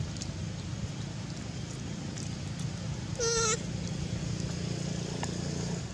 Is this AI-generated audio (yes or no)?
no